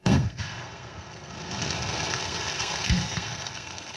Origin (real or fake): fake